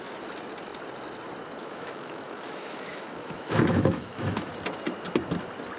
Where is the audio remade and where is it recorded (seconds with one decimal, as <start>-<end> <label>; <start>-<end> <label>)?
0.0-1.6 recorded; 1.6-4.5 remade; 4.5-5.8 recorded